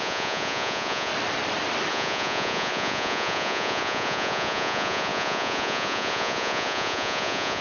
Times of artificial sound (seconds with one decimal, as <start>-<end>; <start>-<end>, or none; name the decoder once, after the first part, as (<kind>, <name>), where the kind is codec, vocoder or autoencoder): 0.0-1.1 (vocoder, Vocos); 1.9-7.6